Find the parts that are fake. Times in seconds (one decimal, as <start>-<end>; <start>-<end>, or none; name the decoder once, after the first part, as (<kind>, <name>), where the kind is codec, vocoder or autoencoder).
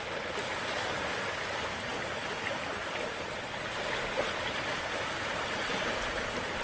none